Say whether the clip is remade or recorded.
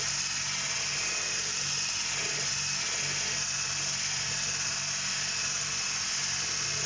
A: recorded